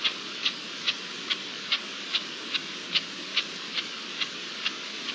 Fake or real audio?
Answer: fake